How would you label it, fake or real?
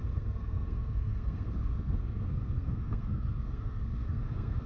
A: fake